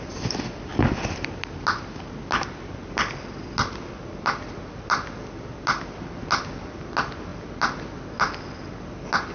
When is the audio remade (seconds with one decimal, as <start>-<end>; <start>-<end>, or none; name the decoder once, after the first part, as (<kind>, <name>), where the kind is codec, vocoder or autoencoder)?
none